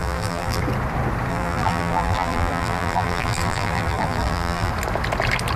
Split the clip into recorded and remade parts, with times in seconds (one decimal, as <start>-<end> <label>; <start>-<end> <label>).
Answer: 0.0-0.6 remade; 0.6-1.3 recorded; 1.3-4.7 remade; 4.7-5.6 recorded